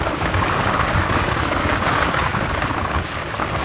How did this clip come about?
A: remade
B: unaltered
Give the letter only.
A